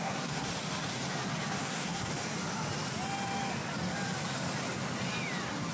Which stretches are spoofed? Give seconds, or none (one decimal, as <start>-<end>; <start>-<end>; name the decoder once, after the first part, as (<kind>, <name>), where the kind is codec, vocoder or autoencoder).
0.0-0.5 (codec, SNAC); 1.6-2.1